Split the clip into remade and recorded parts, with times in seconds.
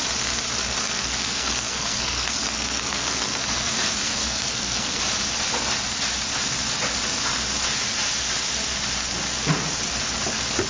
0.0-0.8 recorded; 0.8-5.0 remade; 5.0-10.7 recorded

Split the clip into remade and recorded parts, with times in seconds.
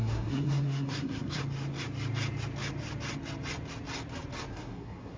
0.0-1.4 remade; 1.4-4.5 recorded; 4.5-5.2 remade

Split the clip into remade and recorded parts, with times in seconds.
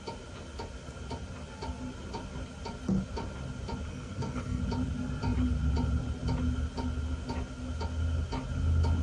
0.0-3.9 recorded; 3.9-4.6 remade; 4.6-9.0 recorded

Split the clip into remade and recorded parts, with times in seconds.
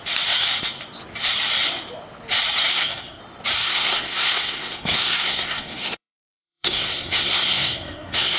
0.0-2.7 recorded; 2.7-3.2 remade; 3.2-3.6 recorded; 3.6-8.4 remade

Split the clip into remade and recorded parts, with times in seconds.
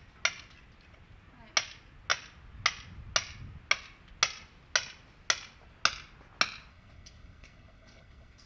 0.0-6.7 recorded; 6.7-8.5 remade